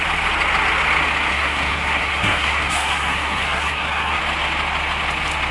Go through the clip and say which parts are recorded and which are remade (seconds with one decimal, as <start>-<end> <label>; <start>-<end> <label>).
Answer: 0.0-1.3 recorded; 1.3-4.2 remade; 4.2-5.5 recorded